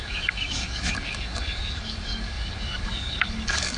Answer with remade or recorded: remade